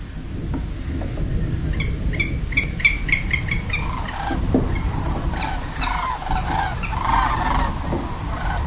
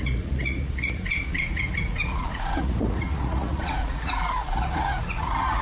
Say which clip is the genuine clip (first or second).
first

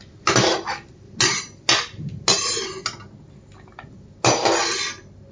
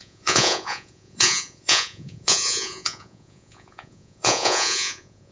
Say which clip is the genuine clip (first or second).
first